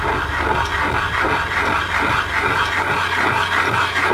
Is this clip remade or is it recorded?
recorded